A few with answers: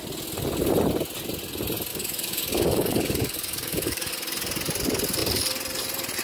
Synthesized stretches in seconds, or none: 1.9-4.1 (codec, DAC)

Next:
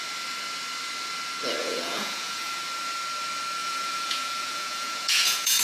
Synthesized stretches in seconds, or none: 1.6-2.5 (vocoder, Vocos); 3.6-5.6

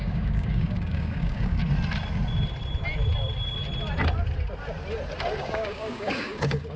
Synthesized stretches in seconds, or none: 0.0-1.6 (codec, DAC); 5.4-6.8

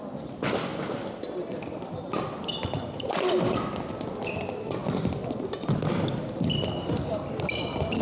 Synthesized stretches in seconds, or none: 0.7-2.2 (vocoder, BigVGAN v2); 4.8-5.3

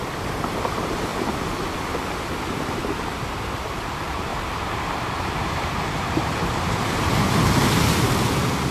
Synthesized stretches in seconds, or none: 4.3-7.1 (vocoder, BigVGAN v2)

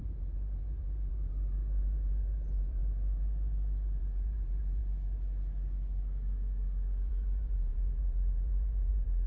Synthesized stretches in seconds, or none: 0.0-2.8 (vocoder, BigVGAN v2); 4.0-4.8; 7.1-9.3

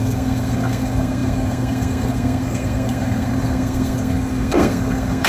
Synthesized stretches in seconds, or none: 0.0-5.3 (codec, SNAC)

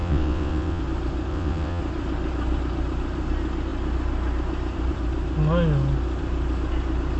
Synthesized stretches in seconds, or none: 0.0-0.8 (vocoder, WaveNeXt); 1.3-1.8